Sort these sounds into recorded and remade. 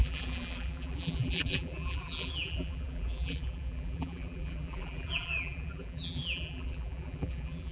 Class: remade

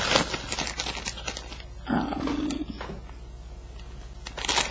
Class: recorded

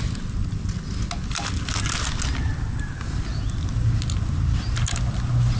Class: recorded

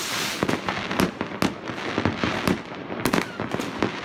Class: recorded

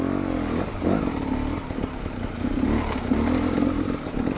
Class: recorded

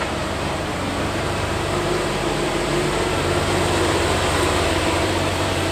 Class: remade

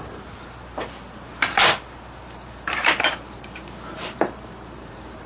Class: remade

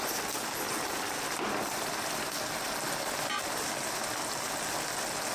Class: recorded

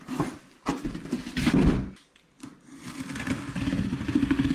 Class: remade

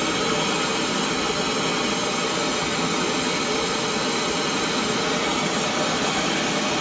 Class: remade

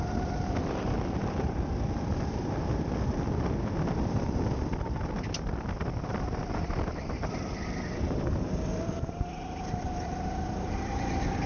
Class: remade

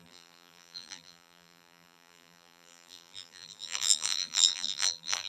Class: remade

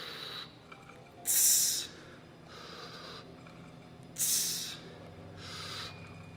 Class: recorded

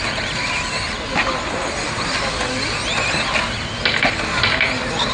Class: recorded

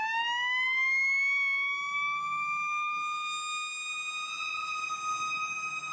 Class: recorded